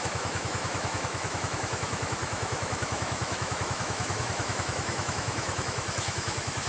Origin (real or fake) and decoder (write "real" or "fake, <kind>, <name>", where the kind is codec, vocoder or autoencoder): fake, autoencoder, DAC-VAE